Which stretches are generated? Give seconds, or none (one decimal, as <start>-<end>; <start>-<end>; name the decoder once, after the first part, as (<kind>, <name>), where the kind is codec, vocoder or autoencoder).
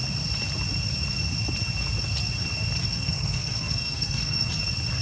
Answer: 2.9-4.5 (codec, SNAC)